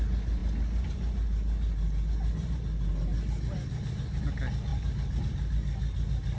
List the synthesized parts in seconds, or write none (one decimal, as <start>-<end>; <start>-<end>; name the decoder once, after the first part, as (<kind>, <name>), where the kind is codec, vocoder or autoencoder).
none